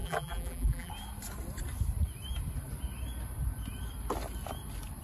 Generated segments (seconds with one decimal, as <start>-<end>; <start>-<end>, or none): 0.0-0.9